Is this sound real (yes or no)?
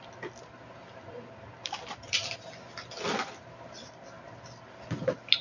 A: yes